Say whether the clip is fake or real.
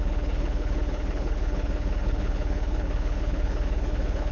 fake